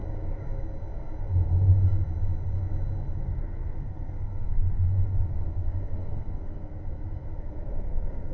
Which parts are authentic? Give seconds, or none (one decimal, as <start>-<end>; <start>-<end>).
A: 0.0-3.4; 6.7-7.4